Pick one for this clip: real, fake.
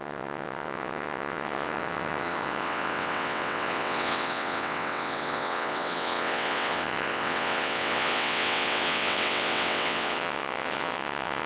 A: fake